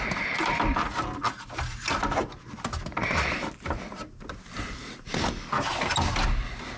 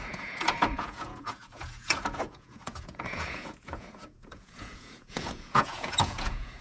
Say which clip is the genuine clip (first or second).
first